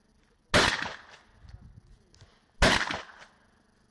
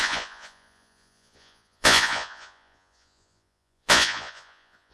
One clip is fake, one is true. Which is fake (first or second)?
second